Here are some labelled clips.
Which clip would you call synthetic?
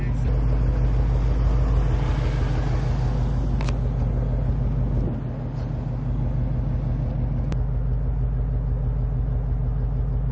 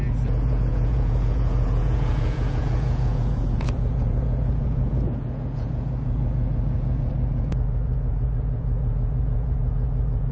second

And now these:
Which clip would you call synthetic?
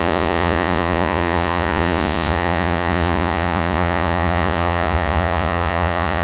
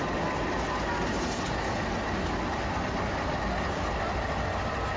first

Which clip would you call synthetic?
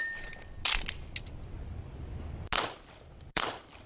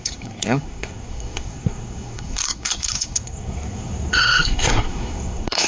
second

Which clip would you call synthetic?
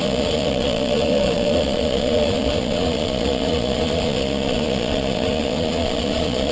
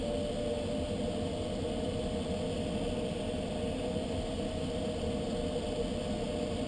first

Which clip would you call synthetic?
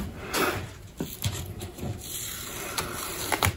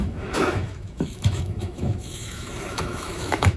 second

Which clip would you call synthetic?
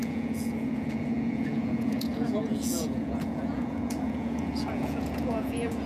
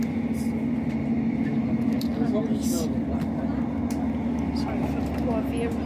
first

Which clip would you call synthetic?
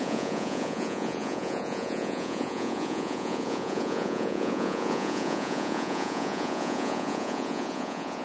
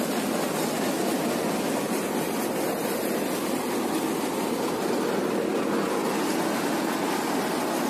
first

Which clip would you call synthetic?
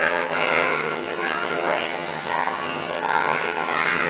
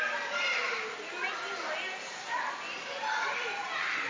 first